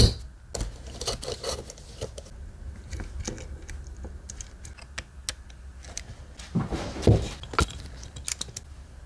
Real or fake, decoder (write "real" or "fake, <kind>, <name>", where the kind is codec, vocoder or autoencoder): real